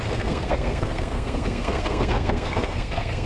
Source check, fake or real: fake